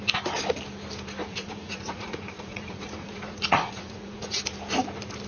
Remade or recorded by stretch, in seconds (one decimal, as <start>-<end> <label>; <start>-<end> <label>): 0.0-1.2 recorded; 1.2-4.4 remade; 4.4-5.3 recorded